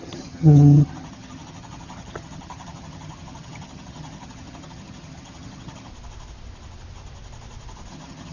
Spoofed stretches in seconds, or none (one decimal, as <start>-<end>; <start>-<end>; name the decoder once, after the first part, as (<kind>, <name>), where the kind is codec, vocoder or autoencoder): 0.0-5.9 (vocoder, HiFi-GAN); 7.9-8.3